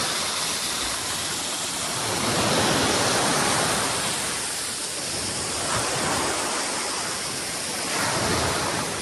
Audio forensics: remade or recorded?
recorded